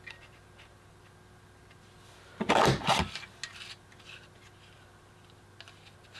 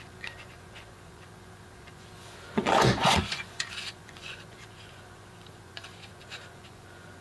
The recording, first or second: first